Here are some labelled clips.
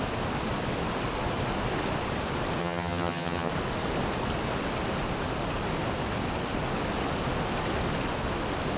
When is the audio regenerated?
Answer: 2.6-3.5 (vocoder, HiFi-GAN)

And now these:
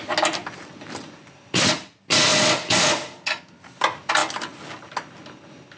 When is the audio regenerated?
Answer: none

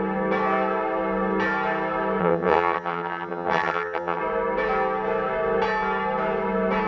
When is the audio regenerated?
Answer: 2.2-4.2 (vocoder, HiFi-GAN)

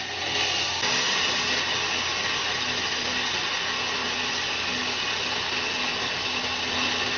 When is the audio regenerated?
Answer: none